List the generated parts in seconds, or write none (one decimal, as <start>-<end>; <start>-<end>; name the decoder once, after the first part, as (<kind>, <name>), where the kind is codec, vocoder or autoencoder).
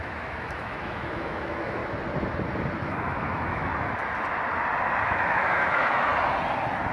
0.0-1.8 (autoencoder, DAC-VAE); 2.8-3.7; 5.0-6.1